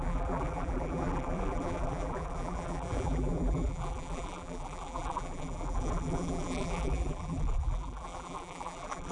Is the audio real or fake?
fake